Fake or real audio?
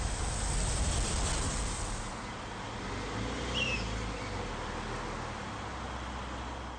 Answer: real